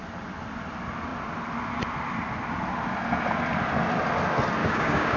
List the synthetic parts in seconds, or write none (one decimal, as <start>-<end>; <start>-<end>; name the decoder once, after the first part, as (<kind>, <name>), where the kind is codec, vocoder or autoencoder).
4.6-5.2 (codec, DAC)

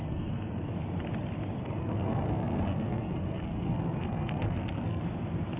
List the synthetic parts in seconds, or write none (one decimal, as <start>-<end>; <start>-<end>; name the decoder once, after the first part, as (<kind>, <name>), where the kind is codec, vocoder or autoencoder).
0.0-0.7 (codec, SNAC); 1.6-5.0